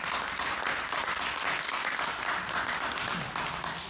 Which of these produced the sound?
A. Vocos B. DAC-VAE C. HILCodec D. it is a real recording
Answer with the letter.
D